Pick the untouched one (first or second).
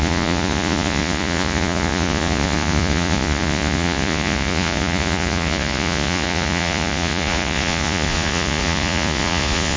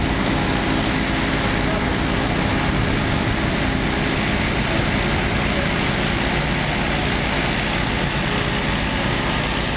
second